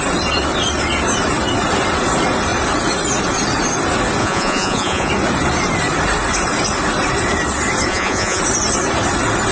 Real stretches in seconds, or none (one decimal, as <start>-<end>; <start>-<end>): 0.0-4.2; 5.1-7.9; 8.4-9.5